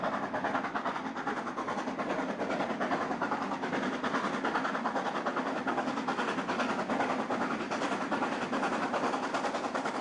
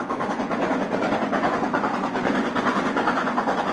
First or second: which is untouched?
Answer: first